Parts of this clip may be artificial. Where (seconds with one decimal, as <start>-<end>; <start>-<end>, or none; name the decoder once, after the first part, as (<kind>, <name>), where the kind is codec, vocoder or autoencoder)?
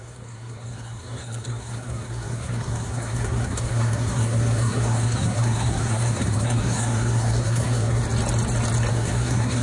0.0-8.0 (codec, SNAC); 8.9-9.6